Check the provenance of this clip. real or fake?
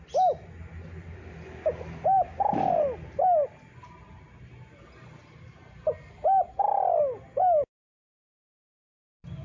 real